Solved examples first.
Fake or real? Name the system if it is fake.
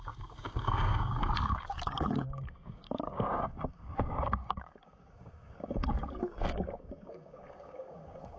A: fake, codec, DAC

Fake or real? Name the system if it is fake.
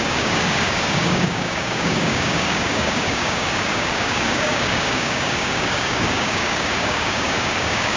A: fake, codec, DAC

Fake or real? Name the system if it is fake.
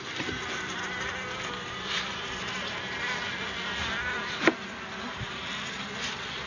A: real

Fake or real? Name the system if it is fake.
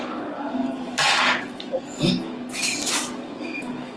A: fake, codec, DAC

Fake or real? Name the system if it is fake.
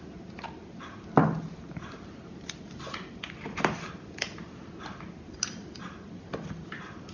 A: real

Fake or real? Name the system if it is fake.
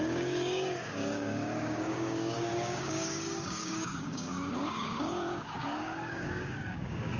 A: fake, codec, DAC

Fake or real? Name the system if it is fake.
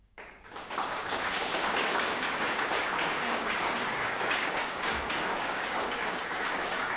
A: fake, codec, DAC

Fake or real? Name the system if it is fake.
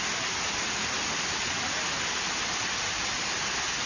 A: real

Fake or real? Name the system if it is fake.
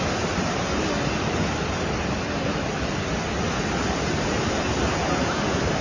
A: real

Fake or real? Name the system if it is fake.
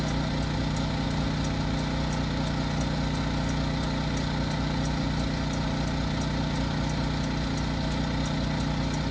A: real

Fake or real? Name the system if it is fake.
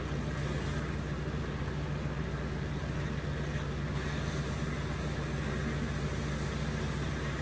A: real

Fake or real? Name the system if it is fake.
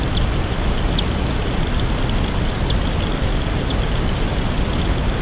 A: real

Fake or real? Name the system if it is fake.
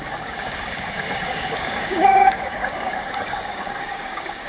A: fake, codec, DAC